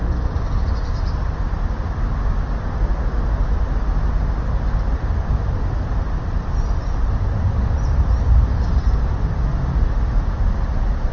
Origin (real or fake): real